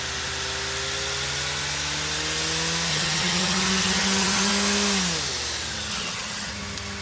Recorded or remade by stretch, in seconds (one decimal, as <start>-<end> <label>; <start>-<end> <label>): 0.0-2.9 recorded; 2.9-4.5 remade; 4.5-5.9 recorded; 5.9-6.5 remade; 6.5-7.0 recorded